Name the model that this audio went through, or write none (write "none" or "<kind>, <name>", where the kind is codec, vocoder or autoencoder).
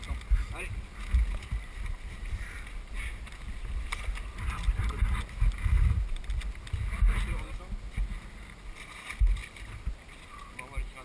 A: none